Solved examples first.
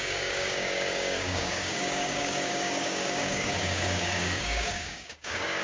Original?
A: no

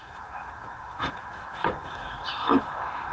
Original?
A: no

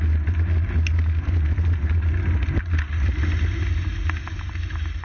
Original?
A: yes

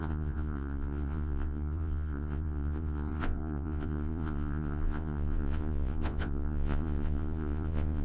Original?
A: no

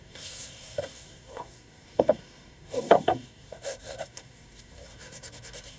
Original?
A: no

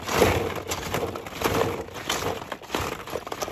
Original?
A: yes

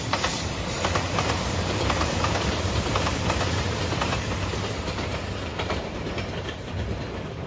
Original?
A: no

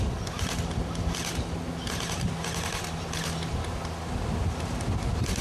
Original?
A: yes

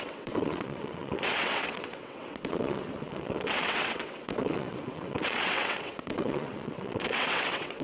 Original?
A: no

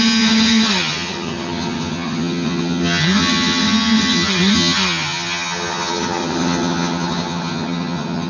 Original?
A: no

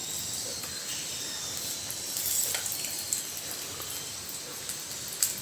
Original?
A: yes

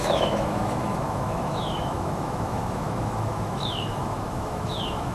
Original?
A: no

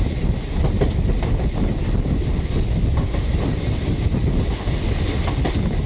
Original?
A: yes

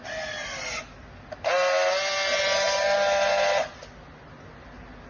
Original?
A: yes